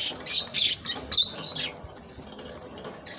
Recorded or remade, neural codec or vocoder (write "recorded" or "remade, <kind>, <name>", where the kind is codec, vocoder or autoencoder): recorded